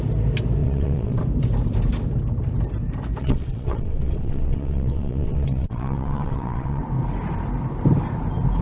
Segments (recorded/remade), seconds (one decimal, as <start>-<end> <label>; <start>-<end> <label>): 0.0-0.6 recorded; 0.6-1.2 remade; 1.2-3.2 recorded; 3.2-6.8 remade; 6.8-8.6 recorded